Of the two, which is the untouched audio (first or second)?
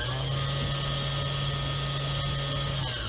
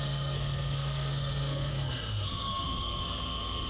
first